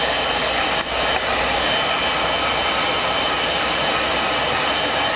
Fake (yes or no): no